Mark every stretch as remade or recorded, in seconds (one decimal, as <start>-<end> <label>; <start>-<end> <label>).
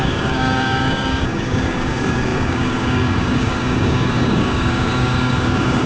0.0-5.9 remade